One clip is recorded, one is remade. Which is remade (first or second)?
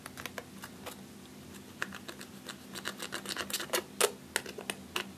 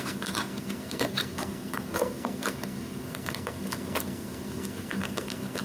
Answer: second